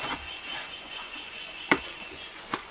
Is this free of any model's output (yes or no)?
no